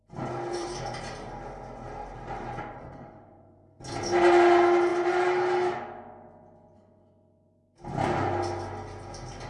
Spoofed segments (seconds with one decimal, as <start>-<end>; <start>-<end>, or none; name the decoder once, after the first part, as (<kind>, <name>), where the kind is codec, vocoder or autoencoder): 0.6-3.8 (vocoder, BigVGAN v2)